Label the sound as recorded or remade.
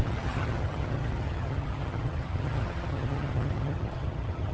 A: remade